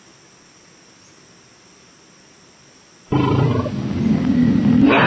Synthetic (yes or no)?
no